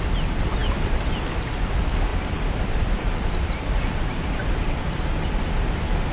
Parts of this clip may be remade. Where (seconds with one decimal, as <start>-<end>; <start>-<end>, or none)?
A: 0.6-1.3; 2.1-5.4